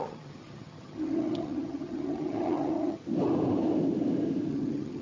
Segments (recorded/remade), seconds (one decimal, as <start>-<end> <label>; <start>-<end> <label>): 0.0-3.0 remade; 3.0-4.5 recorded; 4.5-5.0 remade